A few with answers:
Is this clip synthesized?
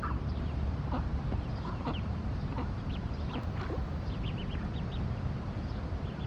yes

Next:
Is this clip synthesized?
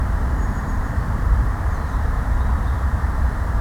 yes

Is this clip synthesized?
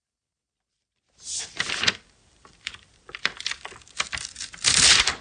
yes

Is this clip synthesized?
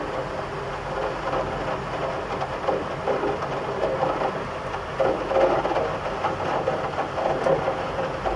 no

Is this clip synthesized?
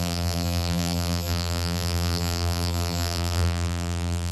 yes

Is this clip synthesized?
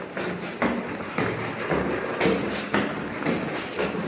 no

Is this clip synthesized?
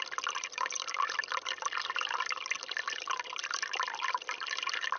yes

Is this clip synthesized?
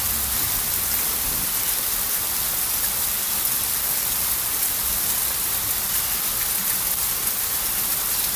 no